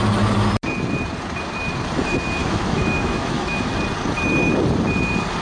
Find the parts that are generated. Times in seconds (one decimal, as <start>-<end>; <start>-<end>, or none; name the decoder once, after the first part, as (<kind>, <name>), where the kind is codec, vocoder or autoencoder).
2.4-3.7 (autoencoder, DAC-VAE)